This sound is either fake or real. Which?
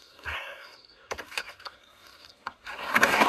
fake